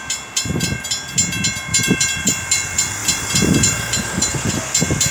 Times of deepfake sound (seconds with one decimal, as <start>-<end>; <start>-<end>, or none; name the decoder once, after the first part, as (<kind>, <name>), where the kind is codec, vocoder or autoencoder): 1.7-2.3 (vocoder, BigVGAN v2); 3.0-4.5